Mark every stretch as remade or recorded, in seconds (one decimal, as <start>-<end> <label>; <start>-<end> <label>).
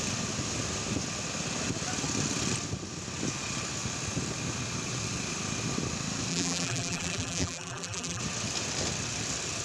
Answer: 0.0-6.3 recorded; 6.3-8.2 remade; 8.2-9.6 recorded